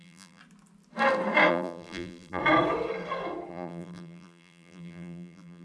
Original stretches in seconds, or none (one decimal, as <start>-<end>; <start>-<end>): 0.4-1.5; 2.4-3.5